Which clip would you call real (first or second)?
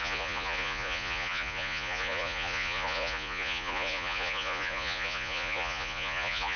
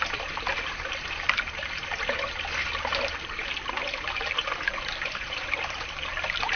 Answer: second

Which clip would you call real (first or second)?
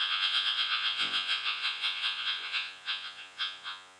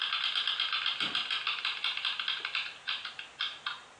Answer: second